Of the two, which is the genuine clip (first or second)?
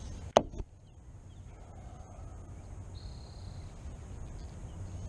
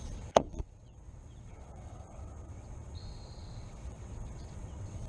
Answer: first